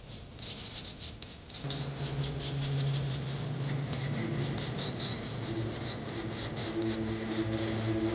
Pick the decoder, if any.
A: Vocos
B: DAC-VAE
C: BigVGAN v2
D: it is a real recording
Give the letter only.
D